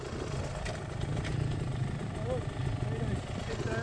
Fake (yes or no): no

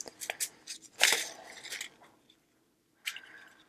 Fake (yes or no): no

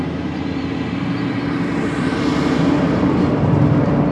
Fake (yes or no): no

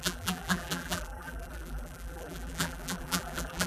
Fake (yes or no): yes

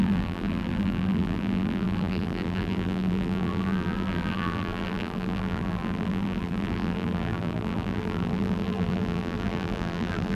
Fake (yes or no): yes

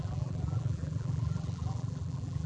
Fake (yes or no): yes